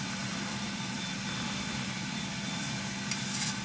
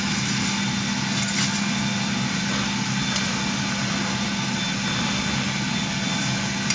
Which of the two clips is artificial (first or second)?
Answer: first